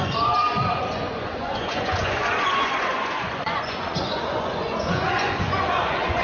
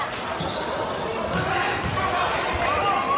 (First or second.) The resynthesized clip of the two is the first